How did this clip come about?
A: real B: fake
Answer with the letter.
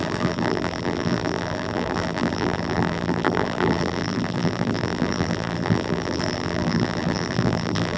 B